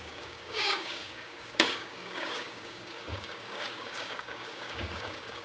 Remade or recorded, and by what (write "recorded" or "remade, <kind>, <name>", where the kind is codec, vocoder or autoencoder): remade, codec, DAC